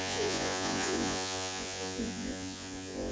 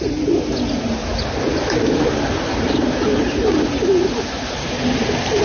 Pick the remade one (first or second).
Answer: first